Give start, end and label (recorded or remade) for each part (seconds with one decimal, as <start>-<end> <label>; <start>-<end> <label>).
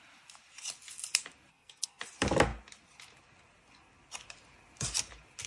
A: 0.0-1.5 recorded; 1.5-2.0 remade; 2.0-5.5 recorded